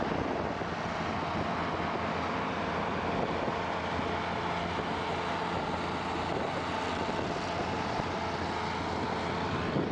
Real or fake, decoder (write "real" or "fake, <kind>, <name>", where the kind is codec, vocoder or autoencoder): real